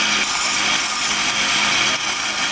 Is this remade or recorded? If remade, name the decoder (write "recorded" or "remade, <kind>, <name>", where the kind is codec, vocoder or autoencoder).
recorded